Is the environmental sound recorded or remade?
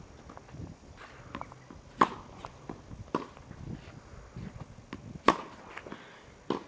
recorded